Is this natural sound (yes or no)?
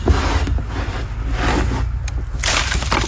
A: yes